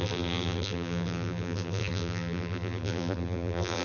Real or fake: fake